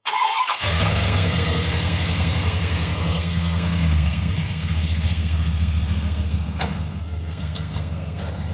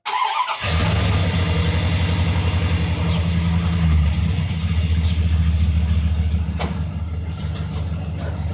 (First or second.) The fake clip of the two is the first